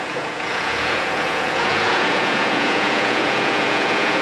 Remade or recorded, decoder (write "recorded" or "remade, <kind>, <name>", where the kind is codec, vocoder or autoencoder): remade, vocoder, Vocos